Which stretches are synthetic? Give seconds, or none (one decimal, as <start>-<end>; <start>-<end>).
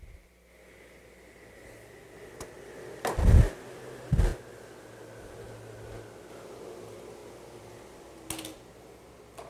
none